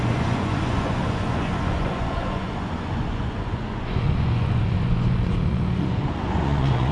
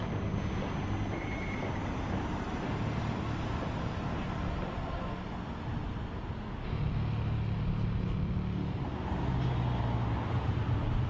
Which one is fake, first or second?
first